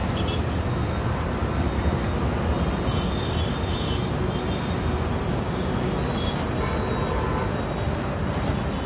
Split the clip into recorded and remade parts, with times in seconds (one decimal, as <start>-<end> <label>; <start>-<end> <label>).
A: 0.0-5.3 recorded; 5.3-5.9 remade; 5.9-8.9 recorded

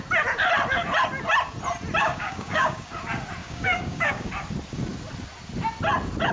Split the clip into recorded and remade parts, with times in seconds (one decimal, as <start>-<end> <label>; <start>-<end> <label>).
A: 0.0-2.0 recorded; 2.0-2.9 remade; 2.9-3.4 recorded; 3.4-4.3 remade; 4.3-6.3 recorded

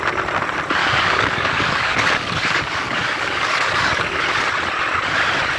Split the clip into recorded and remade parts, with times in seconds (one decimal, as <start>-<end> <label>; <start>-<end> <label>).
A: 0.0-0.8 recorded; 0.8-4.2 remade; 4.2-5.6 recorded

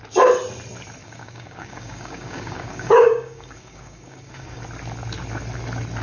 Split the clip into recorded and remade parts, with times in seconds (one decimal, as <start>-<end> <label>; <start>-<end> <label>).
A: 0.0-1.0 recorded; 1.0-4.6 remade; 4.6-6.0 recorded

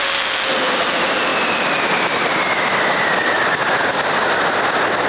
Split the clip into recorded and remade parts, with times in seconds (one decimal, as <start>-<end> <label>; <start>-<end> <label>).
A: 0.0-5.1 recorded